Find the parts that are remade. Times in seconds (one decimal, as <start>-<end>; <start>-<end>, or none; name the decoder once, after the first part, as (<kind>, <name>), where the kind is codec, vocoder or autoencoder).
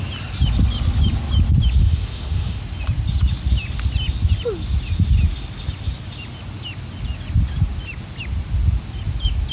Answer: 1.8-2.6 (autoencoder, DAC-VAE)